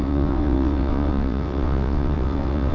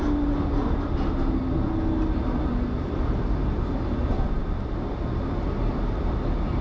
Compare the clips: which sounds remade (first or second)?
first